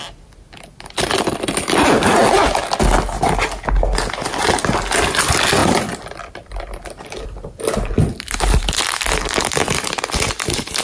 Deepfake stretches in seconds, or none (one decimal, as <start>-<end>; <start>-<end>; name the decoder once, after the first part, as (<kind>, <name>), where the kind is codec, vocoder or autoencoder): 5.6-9.4 (vocoder, BigVGAN v2)